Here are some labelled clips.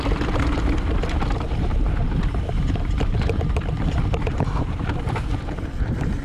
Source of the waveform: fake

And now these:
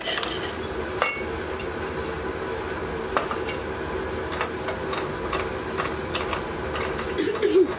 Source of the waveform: real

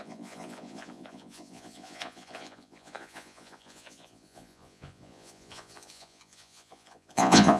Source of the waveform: fake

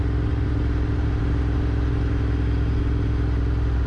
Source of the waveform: real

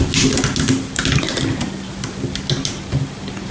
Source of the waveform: real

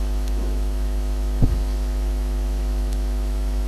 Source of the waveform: fake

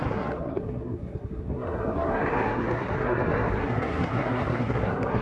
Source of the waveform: fake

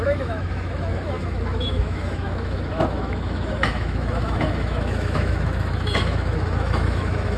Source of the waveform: fake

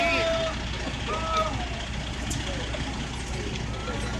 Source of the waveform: real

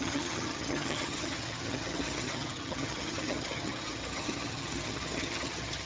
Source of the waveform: fake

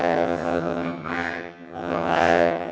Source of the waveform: fake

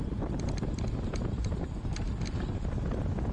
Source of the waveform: real